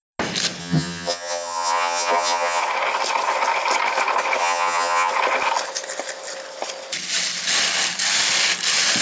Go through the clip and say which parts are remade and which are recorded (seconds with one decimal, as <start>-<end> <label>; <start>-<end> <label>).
0.0-0.6 recorded; 0.6-2.6 remade; 2.6-4.4 recorded; 4.4-5.1 remade; 5.1-9.0 recorded